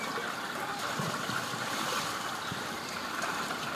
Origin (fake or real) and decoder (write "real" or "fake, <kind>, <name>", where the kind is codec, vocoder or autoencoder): fake, vocoder, BigVGAN v2